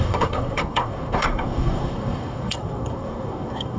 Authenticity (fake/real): fake